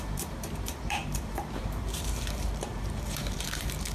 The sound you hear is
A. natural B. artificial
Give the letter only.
B